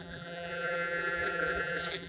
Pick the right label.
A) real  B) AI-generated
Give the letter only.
B